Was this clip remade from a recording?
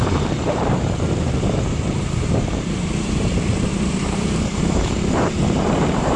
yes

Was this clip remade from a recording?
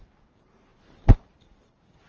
yes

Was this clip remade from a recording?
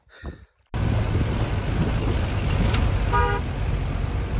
no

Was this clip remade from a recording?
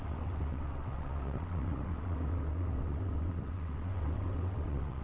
yes